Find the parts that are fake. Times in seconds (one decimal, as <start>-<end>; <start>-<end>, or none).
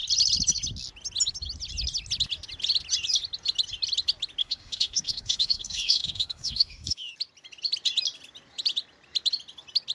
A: 4.4-7.1